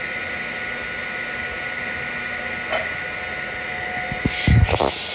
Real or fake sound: real